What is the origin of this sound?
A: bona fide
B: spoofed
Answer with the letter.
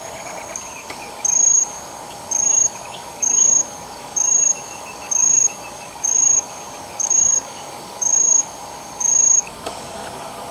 B